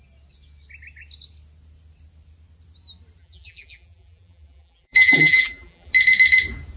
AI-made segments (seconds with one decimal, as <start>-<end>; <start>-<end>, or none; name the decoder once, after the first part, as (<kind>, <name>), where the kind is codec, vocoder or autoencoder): 3.2-5.9 (vocoder, BigVGAN v2)